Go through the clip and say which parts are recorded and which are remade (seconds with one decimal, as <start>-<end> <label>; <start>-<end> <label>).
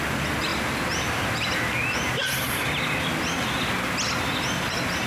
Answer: 0.0-5.1 recorded